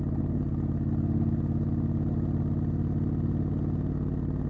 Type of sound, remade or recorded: recorded